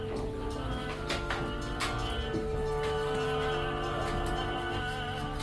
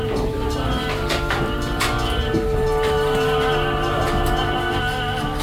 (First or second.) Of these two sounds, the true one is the first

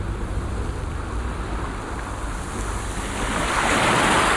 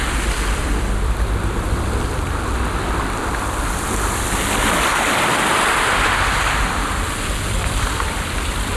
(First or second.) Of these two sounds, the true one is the first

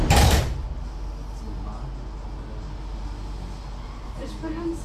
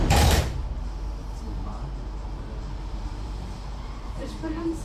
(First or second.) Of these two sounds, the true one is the first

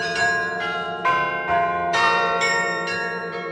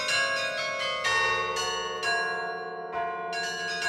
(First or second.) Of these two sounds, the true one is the second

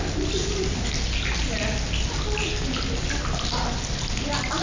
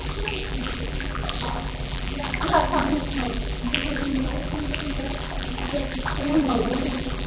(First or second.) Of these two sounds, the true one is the first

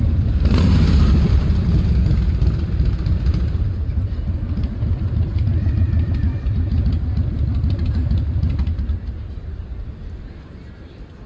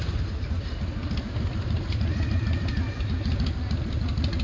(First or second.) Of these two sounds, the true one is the second